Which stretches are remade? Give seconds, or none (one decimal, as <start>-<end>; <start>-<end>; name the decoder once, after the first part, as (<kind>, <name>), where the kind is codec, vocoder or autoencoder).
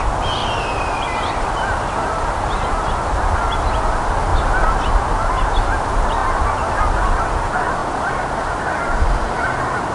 0.4-1.5 (vocoder, BigVGAN v2); 4.3-4.9; 7.8-8.4